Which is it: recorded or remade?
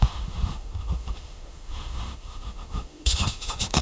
remade